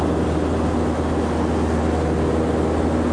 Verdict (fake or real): real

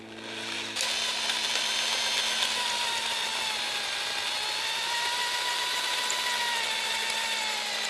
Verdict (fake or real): real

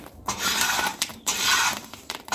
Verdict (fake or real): fake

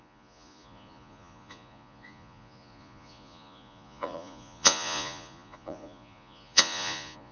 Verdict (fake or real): fake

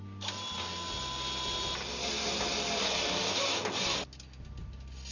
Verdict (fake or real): real